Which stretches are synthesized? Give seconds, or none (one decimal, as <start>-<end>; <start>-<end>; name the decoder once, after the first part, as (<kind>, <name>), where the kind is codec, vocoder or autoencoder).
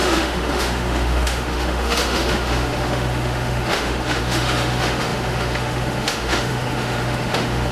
0.0-7.7 (autoencoder, DAC-VAE)